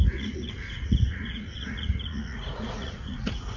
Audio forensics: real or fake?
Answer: fake